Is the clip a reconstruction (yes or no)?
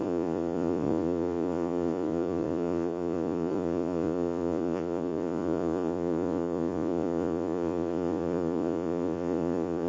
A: yes